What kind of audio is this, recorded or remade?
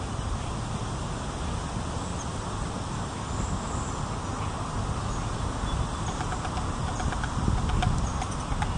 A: recorded